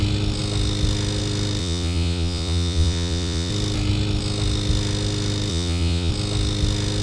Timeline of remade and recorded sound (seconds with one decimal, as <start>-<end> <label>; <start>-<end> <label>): 0.0-1.6 recorded; 1.6-3.5 remade; 3.5-5.5 recorded; 5.5-6.1 remade; 6.1-7.0 recorded